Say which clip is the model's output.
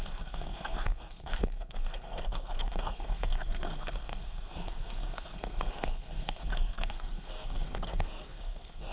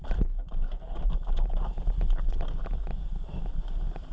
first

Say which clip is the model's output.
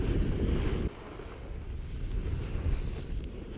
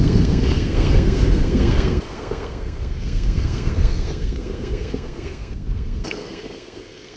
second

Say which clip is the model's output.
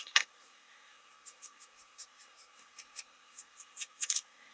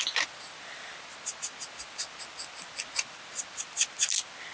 first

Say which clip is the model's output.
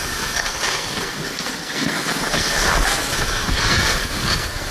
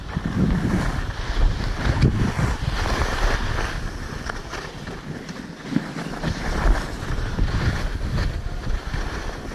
first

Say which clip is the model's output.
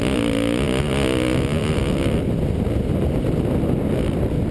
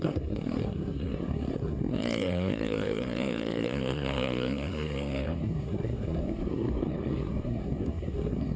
second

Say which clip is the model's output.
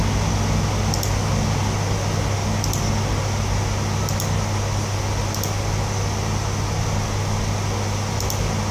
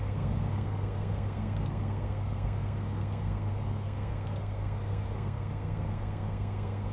second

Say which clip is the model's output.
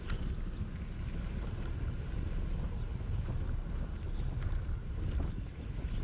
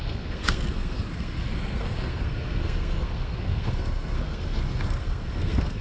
second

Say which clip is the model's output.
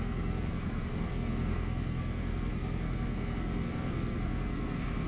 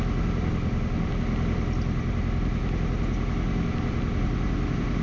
first